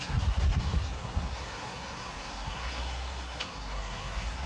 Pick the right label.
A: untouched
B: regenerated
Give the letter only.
B